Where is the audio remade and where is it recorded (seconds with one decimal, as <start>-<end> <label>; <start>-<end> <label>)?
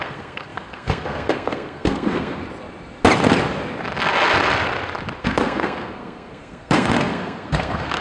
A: 0.0-2.4 remade; 2.4-5.2 recorded; 5.2-8.0 remade